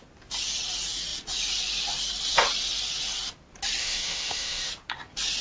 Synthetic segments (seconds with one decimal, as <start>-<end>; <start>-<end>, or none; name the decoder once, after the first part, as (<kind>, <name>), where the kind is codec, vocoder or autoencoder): 3.8-4.7 (autoencoder, DAC-VAE)